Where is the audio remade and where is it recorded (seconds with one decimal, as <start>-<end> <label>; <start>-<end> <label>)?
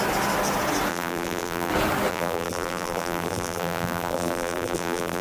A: 0.0-0.9 recorded; 0.9-1.7 remade; 1.7-2.1 recorded; 2.1-5.2 remade